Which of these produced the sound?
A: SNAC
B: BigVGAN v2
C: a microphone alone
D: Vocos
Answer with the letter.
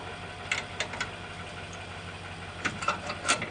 C